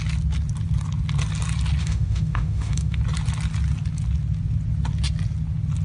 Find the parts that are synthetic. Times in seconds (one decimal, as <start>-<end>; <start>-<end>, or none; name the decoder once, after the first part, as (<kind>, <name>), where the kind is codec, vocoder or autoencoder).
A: 1.8-3.0 (autoencoder, DAC-VAE)